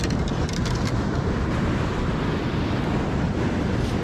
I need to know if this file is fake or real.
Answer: fake